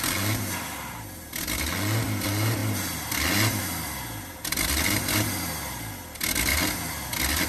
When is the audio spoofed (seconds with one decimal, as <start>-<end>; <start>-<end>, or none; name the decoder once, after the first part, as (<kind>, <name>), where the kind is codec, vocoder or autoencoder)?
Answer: none